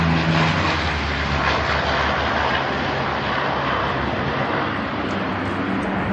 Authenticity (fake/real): real